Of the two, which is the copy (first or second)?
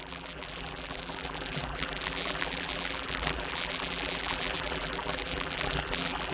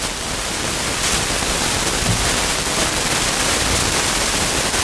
first